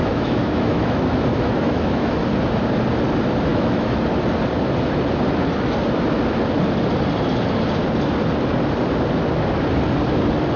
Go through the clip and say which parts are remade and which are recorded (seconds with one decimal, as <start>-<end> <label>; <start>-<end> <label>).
0.0-2.2 remade; 2.2-3.5 recorded; 3.5-4.0 remade; 4.0-10.6 recorded